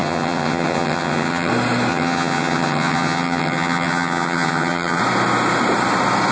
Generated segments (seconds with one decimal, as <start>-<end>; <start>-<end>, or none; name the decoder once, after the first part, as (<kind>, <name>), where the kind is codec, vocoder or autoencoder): 0.0-1.5 (vocoder, HiFi-GAN); 1.9-5.0